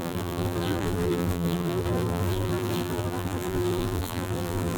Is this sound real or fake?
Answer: fake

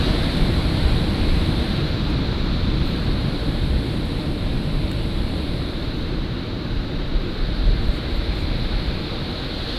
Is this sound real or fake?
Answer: fake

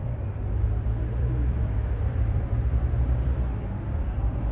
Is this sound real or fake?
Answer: fake